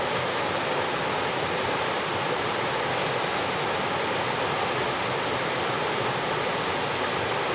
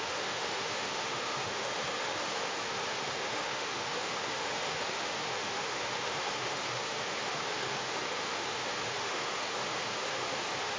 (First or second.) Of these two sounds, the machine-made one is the second